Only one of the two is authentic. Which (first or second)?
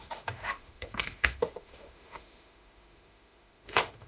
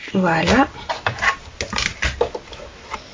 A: second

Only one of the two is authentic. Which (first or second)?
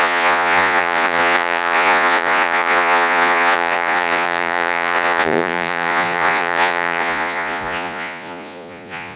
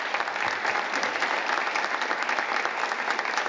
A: second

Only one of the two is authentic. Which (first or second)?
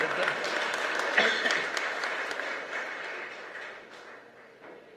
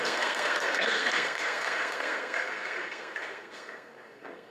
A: first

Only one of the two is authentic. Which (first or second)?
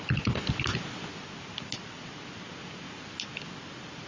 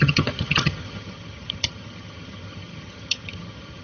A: first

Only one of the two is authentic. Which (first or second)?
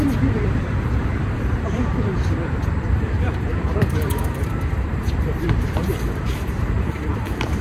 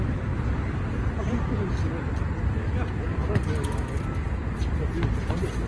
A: second